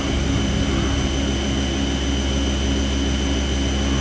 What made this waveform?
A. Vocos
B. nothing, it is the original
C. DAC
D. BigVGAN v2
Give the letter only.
B